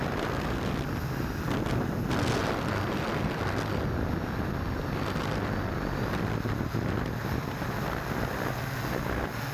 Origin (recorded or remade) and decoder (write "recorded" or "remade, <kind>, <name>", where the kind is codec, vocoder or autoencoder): recorded